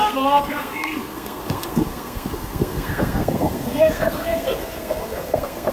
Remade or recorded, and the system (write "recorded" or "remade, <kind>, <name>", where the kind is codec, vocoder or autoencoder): remade, codec, SNAC